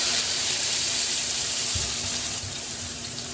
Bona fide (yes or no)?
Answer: no